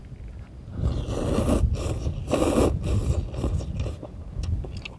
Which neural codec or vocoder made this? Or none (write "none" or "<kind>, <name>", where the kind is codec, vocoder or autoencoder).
none